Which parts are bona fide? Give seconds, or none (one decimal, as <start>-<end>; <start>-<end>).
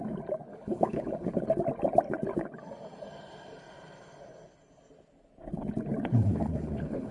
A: 0.0-0.5; 1.4-6.1